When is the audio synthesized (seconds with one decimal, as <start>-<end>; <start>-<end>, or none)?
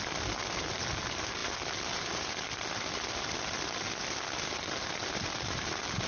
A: none